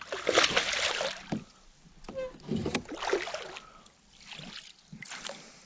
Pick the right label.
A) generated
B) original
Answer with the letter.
B